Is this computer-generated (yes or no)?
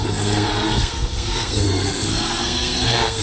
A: yes